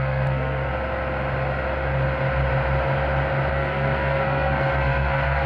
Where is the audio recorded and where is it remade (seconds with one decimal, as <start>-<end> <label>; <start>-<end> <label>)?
0.0-0.7 remade; 0.7-3.5 recorded; 3.5-5.5 remade